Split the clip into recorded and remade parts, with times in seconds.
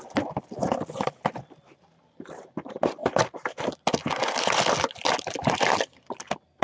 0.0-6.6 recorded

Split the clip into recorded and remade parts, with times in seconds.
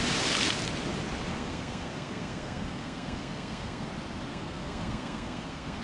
0.0-1.3 recorded; 1.3-3.9 remade; 3.9-4.3 recorded; 4.3-5.8 remade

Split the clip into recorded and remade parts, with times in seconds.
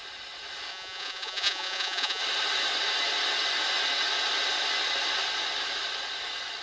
0.0-0.7 recorded; 0.7-2.2 remade; 2.2-6.6 recorded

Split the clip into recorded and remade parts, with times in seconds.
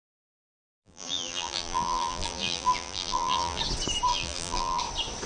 0.0-0.4 recorded; 0.4-3.6 remade; 3.6-4.1 recorded; 4.1-4.8 remade; 4.8-5.3 recorded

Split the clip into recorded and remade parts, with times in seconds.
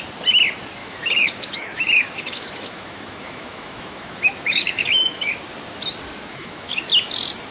0.0-0.8 recorded; 0.8-5.3 remade; 5.3-6.2 recorded; 6.2-6.8 remade; 6.8-7.5 recorded